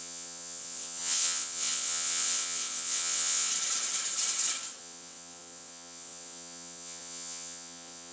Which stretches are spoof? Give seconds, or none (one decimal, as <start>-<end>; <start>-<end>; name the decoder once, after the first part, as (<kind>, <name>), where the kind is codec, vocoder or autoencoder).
0.0-3.5 (vocoder, WaveNeXt); 4.8-8.1